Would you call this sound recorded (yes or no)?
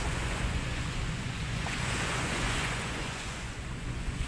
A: no